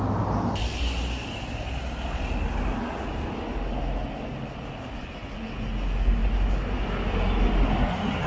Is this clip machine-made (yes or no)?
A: no